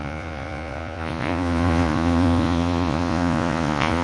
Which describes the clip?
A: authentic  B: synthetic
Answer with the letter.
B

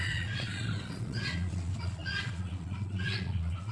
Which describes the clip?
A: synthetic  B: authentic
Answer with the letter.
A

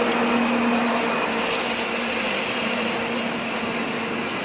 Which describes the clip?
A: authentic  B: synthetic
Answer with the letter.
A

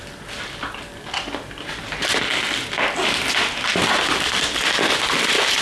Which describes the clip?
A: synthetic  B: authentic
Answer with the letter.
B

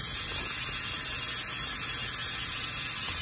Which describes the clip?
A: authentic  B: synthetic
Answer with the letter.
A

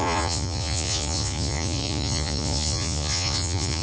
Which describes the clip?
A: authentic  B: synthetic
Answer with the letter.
B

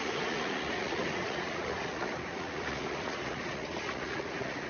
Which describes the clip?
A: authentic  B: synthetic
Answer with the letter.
B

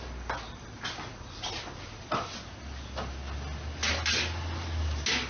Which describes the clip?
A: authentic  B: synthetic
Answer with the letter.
A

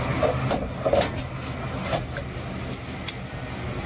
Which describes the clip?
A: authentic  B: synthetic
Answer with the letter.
A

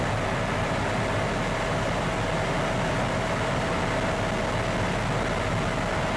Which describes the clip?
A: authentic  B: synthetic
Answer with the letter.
A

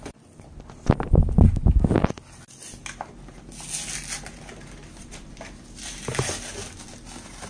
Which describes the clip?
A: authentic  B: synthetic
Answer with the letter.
A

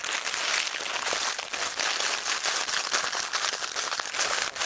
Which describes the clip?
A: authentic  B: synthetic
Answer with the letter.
A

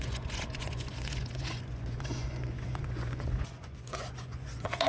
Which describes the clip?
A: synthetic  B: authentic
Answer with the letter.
A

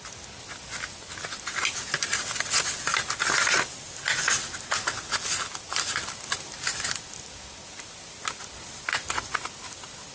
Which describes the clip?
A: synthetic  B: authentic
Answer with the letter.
B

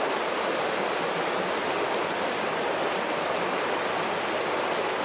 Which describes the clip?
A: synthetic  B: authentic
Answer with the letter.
B